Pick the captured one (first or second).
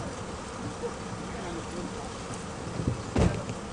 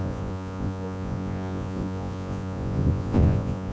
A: first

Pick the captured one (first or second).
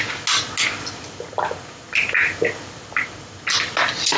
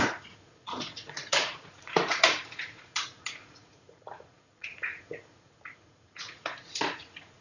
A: first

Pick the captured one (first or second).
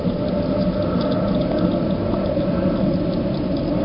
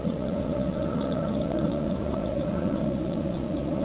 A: first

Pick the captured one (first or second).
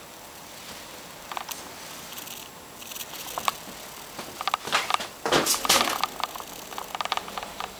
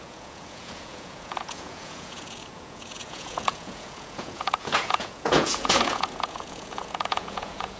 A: first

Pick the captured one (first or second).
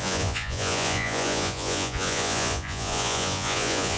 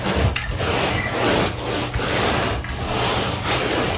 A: second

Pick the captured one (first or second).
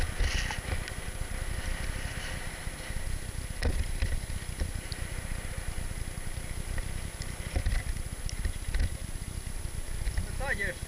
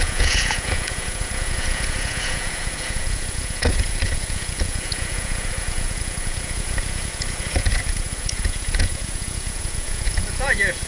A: first